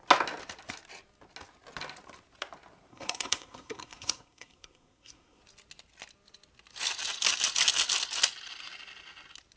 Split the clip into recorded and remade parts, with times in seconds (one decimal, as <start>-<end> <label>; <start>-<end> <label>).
0.0-2.9 recorded; 2.9-5.4 remade; 5.4-9.6 recorded